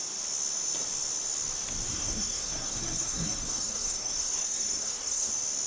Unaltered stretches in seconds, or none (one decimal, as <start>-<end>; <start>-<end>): 0.0-1.9; 5.3-5.7